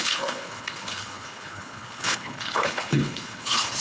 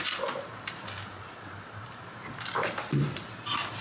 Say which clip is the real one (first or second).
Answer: second